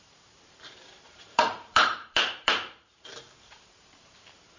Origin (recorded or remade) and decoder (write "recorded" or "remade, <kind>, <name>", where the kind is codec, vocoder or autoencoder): remade, vocoder, BigVGAN v2